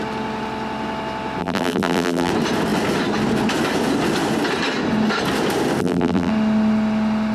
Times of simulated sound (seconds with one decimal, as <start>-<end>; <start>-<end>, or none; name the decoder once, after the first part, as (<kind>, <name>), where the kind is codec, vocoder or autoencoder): 1.4-2.3 (vocoder, BigVGAN v2); 5.8-6.3